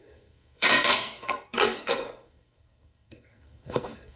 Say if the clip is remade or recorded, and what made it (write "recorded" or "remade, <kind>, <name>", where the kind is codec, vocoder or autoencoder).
remade, codec, SNAC